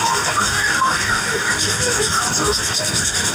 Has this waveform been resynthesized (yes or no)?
yes